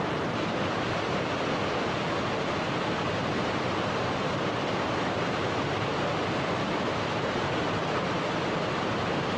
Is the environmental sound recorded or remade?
remade